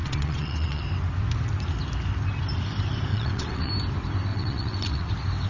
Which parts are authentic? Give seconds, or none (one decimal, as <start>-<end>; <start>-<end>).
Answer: 0.8-3.1; 3.7-4.3; 5.1-5.5